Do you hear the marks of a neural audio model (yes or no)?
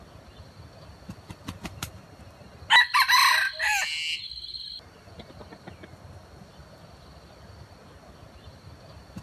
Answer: no